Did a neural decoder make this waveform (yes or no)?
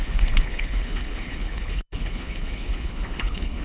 yes